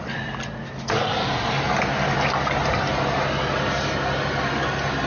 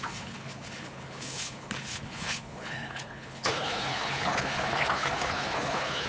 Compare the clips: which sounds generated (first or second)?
second